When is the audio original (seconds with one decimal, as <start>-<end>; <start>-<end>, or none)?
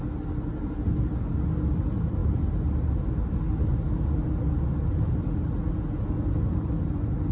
0.0-7.3